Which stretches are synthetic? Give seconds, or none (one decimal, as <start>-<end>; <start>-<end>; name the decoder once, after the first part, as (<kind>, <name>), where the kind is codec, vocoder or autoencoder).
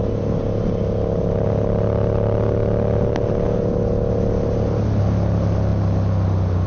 none